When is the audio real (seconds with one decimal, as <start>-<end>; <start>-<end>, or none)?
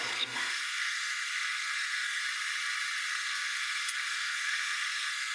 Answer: 2.2-3.1